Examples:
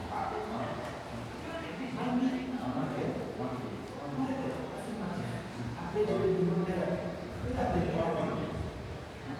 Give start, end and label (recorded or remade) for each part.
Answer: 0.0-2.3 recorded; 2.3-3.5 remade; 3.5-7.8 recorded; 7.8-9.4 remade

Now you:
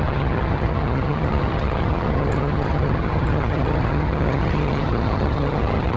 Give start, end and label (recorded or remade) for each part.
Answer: 0.0-6.0 remade

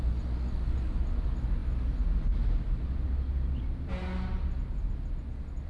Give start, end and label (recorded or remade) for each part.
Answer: 0.0-5.7 recorded

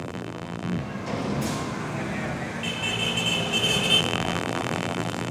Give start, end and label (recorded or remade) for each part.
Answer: 0.0-0.8 remade; 0.8-4.0 recorded; 4.0-5.3 remade